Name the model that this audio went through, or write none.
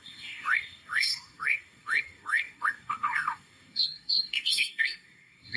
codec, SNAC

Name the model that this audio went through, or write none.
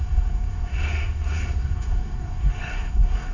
codec, SNAC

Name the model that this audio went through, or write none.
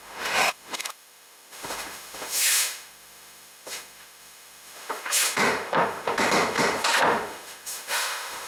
autoencoder, DAC-VAE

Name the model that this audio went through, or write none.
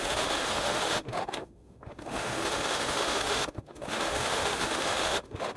autoencoder, DAC-VAE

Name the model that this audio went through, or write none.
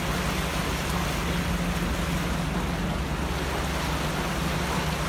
none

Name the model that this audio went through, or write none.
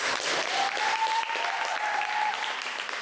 none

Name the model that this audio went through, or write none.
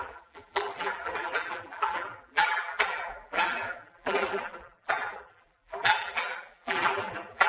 vocoder, BigVGAN v2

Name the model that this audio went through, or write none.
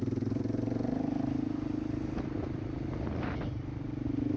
none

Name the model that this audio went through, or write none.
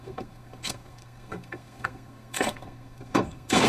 codec, SNAC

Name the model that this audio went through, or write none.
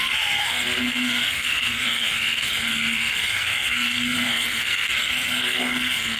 codec, SNAC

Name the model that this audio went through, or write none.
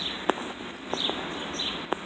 none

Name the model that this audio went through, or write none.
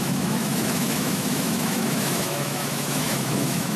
autoencoder, DAC-VAE